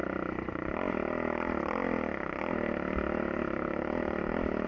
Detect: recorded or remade recorded